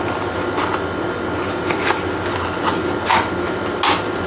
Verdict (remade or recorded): recorded